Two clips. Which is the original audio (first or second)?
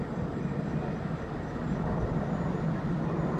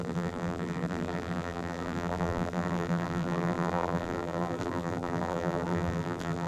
first